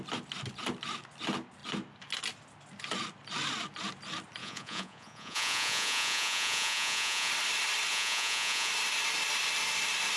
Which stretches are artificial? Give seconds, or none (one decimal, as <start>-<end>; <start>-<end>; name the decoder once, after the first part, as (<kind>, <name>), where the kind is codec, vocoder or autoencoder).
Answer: 4.4-7.3 (vocoder, Vocos); 7.9-8.7